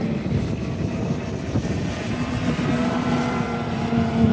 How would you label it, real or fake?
fake